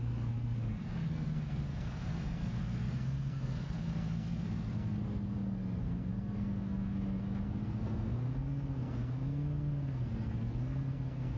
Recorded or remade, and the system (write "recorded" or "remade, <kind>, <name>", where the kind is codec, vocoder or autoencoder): remade, codec, SNAC